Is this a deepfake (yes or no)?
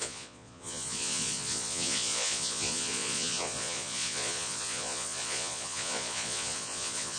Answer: yes